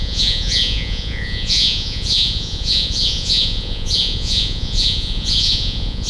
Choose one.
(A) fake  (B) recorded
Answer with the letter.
A